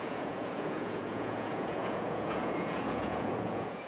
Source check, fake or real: fake